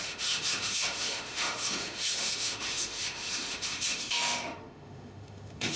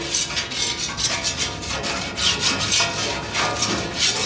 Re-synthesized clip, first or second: first